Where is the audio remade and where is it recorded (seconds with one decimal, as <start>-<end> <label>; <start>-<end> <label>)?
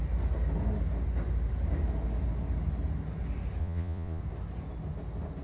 0.0-3.6 recorded; 3.6-4.2 remade; 4.2-5.4 recorded